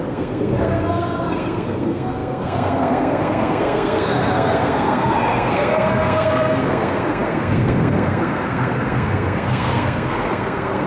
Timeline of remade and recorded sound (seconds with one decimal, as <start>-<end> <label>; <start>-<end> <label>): 0.0-10.9 remade